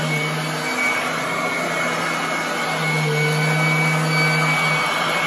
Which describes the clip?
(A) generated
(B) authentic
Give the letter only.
B